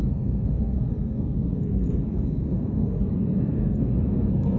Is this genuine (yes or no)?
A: no